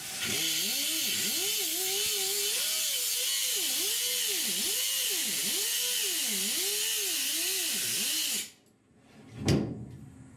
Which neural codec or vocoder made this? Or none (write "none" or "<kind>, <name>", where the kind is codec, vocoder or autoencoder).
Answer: none